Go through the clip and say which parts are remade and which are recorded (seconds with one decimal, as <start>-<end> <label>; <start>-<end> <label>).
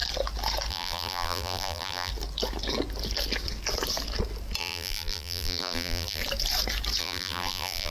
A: 0.0-0.7 recorded; 0.7-2.1 remade; 2.1-4.6 recorded; 4.6-6.2 remade; 6.2-7.0 recorded; 7.0-7.9 remade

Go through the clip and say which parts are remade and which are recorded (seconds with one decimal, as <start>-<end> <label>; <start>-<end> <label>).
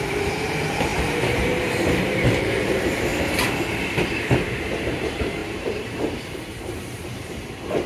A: 0.0-3.1 remade; 3.1-4.8 recorded; 4.8-7.9 remade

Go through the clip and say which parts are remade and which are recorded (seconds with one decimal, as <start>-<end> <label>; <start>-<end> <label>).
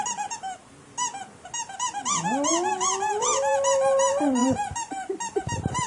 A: 0.0-0.6 remade; 0.6-2.7 recorded; 2.7-5.9 remade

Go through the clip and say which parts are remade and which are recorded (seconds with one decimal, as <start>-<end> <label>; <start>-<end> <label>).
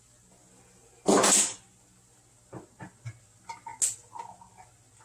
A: 0.0-5.0 recorded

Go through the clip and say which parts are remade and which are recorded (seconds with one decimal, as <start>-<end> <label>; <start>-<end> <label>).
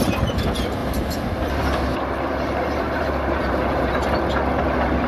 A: 0.0-0.8 recorded; 0.8-3.9 remade; 3.9-5.1 recorded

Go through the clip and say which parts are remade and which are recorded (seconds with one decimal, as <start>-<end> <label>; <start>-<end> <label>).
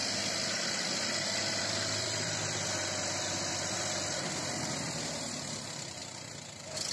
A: 0.0-6.0 remade; 6.0-6.9 recorded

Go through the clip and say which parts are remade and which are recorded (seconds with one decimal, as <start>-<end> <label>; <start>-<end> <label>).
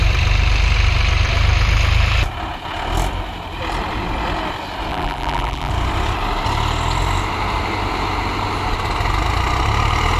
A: 0.0-4.9 recorded; 4.9-5.7 remade; 5.7-10.2 recorded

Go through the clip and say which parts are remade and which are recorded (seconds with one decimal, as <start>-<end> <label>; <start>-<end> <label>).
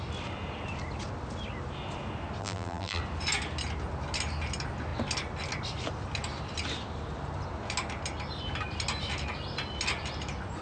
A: 0.0-2.4 recorded; 2.4-3.0 remade; 3.0-10.6 recorded